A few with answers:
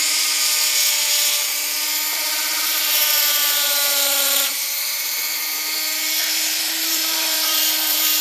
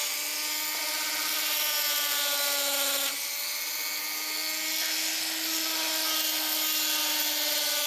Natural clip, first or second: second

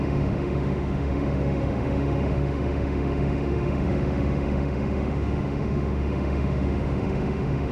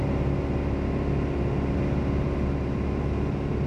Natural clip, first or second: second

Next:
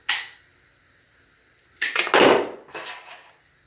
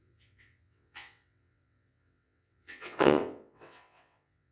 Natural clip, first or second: first